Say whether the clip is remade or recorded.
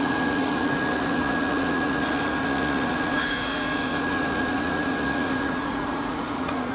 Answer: remade